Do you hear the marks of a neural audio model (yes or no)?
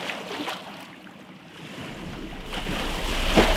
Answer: yes